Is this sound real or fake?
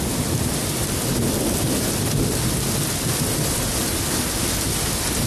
real